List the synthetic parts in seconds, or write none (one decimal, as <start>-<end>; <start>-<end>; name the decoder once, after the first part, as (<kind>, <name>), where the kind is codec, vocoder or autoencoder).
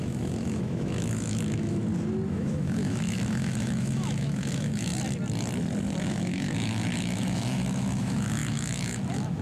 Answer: 0.0-1.8 (autoencoder, DAC-VAE); 2.3-4.9; 6.0-9.4